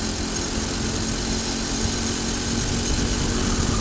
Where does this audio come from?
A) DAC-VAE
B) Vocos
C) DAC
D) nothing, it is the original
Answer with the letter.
D